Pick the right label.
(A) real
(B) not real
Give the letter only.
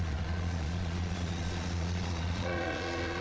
B